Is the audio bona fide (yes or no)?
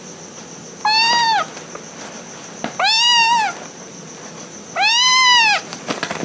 yes